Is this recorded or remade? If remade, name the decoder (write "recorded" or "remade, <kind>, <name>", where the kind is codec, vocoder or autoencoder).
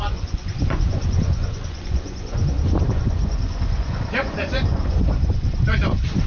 remade, vocoder, Vocos